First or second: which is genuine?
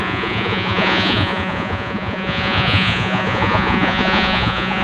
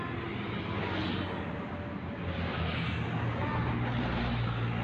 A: second